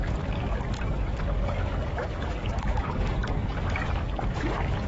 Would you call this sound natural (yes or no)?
no